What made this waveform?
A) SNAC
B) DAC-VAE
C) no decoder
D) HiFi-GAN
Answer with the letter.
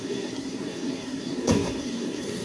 A